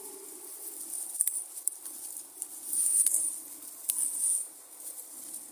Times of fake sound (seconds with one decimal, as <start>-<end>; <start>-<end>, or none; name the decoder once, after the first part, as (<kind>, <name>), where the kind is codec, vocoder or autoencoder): none